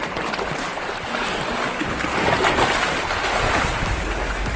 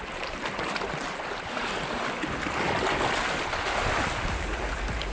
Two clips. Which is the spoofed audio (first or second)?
second